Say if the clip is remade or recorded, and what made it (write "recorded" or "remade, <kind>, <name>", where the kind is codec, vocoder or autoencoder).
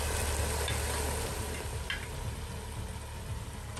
recorded